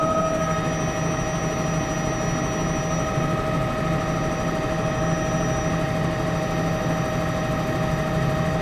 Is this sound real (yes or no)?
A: yes